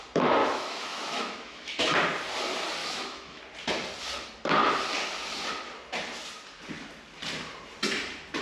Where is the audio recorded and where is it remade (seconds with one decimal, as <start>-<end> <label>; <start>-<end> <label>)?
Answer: 0.0-0.4 recorded; 0.4-1.8 remade; 1.8-2.8 recorded; 2.8-3.4 remade; 3.4-8.4 recorded